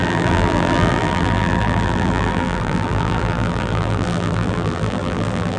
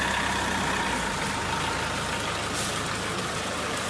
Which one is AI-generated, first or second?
first